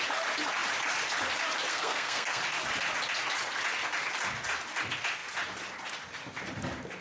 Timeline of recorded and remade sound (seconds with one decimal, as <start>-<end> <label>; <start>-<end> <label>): 0.0-1.7 recorded; 1.7-2.4 remade; 2.4-7.0 recorded